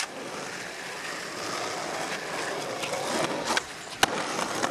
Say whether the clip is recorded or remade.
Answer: recorded